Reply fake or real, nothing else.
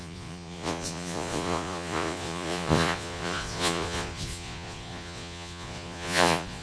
fake